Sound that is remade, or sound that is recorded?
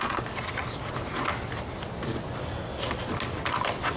recorded